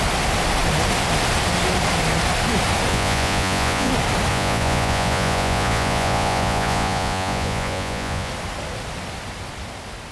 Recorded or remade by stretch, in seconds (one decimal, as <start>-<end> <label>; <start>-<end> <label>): 0.0-2.9 recorded; 2.9-3.9 remade; 3.9-4.3 recorded; 4.3-8.3 remade; 8.3-10.1 recorded